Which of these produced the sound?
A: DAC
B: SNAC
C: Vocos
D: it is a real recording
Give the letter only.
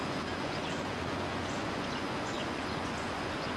C